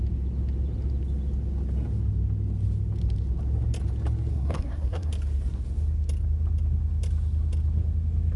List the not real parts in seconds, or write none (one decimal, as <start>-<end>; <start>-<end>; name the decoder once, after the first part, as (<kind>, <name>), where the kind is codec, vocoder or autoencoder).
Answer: 4.3-5.1 (codec, SNAC)